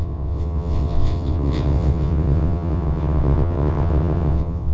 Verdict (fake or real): fake